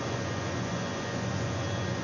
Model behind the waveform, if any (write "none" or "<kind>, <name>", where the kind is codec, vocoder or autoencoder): vocoder, Vocos